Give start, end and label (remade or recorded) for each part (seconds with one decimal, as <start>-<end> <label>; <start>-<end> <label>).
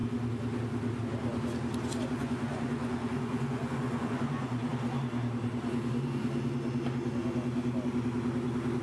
0.0-2.0 recorded; 2.0-4.7 remade; 4.7-8.8 recorded